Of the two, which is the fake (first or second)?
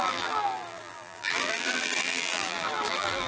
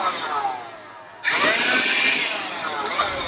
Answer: first